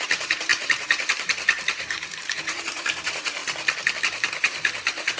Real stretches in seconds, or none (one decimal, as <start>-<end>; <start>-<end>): 3.4-4.0